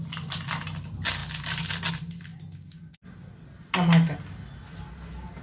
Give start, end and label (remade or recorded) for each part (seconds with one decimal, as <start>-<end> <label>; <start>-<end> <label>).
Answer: 0.0-5.4 recorded